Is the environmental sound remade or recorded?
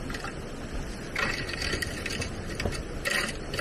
recorded